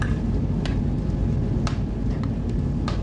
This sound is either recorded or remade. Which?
recorded